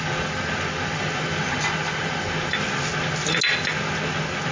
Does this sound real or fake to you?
real